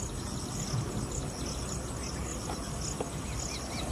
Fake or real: real